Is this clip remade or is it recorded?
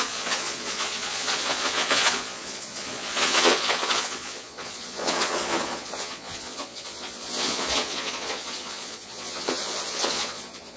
remade